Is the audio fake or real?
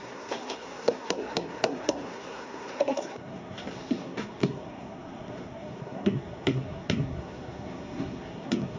fake